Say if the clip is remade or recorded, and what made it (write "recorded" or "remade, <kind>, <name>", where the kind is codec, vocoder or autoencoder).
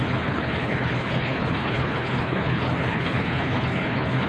remade, codec, HILCodec